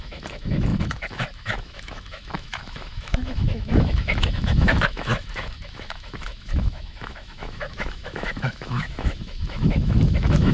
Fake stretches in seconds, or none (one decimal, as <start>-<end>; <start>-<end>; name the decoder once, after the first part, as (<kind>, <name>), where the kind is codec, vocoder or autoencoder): 0.0-10.5 (autoencoder, DAC-VAE)